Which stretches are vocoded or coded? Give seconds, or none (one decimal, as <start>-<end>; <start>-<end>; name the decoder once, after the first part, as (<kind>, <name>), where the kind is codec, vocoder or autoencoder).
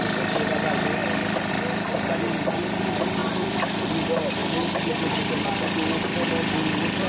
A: none